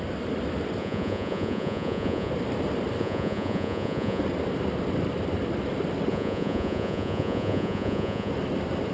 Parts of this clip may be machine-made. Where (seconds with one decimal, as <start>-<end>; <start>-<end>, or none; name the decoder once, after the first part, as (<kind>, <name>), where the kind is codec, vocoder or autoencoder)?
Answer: 0.8-2.3 (vocoder, Vocos); 3.0-4.2; 6.1-8.3